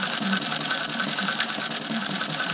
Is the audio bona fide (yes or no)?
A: yes